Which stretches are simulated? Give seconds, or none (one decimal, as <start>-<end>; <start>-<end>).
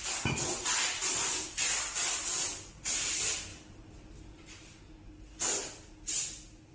none